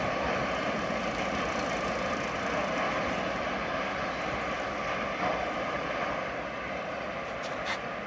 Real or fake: real